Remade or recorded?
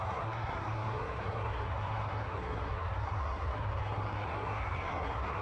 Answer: remade